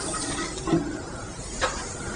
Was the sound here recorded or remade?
recorded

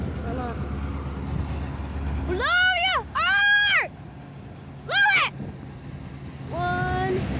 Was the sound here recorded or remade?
recorded